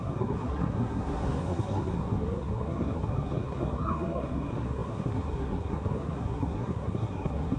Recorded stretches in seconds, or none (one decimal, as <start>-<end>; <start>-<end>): none